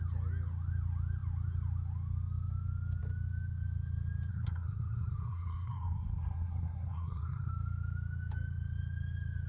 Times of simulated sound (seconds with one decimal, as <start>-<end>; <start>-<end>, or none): 4.3-7.5